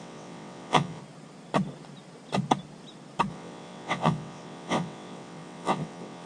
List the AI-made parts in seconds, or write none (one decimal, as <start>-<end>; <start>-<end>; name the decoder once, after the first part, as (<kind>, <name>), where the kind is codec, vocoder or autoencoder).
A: 0.0-1.0 (vocoder, WaveNeXt); 3.3-6.3